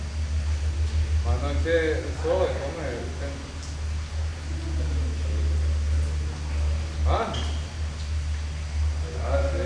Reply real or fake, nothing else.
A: real